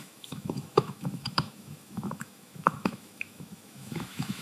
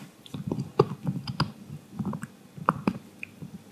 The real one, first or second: second